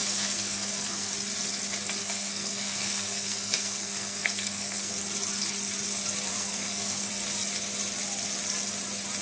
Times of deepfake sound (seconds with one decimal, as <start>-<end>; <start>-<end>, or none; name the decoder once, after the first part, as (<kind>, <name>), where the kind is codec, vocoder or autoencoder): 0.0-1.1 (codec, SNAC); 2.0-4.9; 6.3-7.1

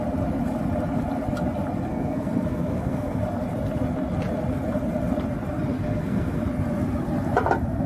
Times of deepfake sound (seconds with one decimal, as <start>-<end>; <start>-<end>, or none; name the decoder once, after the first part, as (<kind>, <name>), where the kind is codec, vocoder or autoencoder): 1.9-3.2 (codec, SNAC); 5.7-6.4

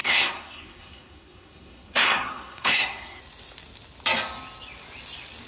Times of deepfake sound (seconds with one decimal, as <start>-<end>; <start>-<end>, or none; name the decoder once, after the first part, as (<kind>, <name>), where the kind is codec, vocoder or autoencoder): 0.0-3.2 (codec, SNAC)